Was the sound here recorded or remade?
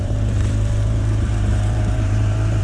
remade